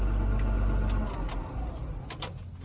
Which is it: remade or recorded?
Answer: recorded